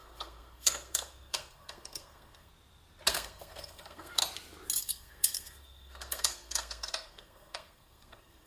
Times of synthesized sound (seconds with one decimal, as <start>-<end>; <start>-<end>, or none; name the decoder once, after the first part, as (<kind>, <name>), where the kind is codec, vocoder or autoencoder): 0.0-2.5 (codec, SNAC); 3.1-4.2; 4.8-8.5